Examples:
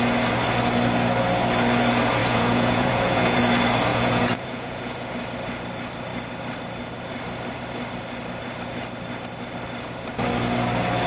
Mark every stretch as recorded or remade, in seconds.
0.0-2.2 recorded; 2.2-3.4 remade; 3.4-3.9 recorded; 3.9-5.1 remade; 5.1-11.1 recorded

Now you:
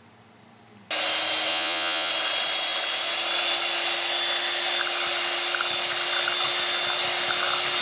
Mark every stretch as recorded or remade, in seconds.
0.0-1.5 recorded; 1.5-2.1 remade; 2.1-7.8 recorded